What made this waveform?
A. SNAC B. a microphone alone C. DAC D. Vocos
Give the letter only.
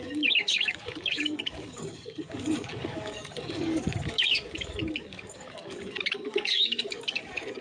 C